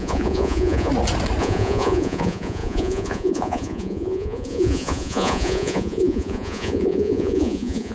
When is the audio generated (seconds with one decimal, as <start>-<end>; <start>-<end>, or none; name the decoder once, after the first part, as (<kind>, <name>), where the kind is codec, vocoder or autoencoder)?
0.0-0.9 (vocoder, Vocos); 1.4-7.9